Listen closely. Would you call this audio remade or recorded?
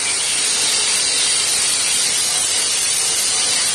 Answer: recorded